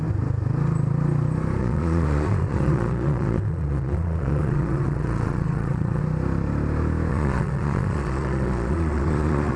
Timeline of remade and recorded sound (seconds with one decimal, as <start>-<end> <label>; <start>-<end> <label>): 0.0-1.6 recorded; 1.6-6.0 remade; 6.0-7.1 recorded; 7.1-9.6 remade

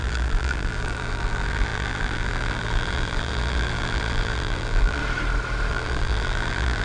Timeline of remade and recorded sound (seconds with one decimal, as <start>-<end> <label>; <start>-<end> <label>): 0.0-5.0 remade; 5.0-5.7 recorded; 5.7-6.8 remade

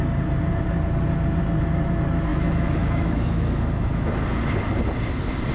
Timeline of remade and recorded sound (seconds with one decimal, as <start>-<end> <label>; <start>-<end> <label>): 0.0-2.3 recorded; 2.3-4.1 remade; 4.1-5.5 recorded

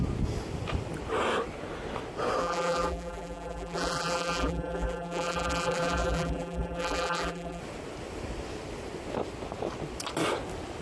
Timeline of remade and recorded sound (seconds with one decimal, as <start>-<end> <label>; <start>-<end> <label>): 0.0-2.4 recorded; 2.4-7.6 remade; 7.6-10.8 recorded

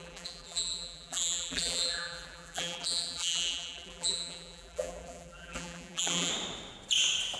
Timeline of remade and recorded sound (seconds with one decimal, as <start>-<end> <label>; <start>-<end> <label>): 0.0-6.3 remade; 6.3-7.4 recorded